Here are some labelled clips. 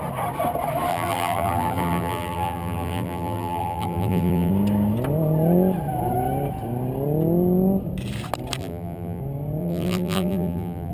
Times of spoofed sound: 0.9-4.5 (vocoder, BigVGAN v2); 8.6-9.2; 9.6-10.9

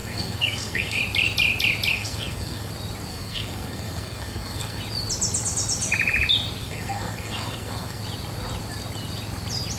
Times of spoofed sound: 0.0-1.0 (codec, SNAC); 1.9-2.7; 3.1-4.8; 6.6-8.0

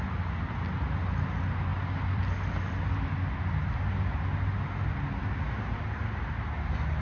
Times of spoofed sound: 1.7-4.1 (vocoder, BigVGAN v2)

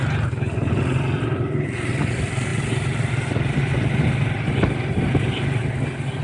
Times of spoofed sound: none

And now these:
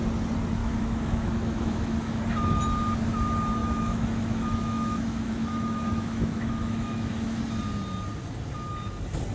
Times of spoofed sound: 0.6-2.2 (autoencoder, DAC-VAE); 3.6-7.4